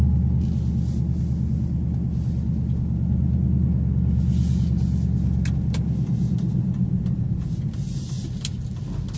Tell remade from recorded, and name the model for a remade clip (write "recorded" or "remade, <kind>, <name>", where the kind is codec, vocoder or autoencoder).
recorded